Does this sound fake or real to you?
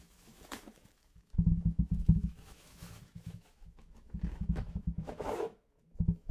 fake